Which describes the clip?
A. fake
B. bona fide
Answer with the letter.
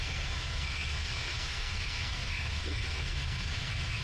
A